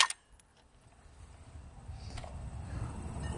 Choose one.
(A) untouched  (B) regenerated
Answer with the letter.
A